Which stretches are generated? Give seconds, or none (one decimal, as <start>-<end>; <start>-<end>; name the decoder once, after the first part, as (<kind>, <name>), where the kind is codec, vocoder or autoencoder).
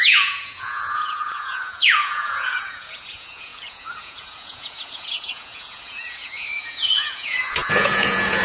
0.0-8.4 (vocoder, Vocos)